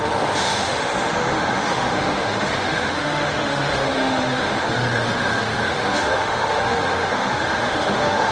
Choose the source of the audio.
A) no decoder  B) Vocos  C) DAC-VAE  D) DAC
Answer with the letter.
C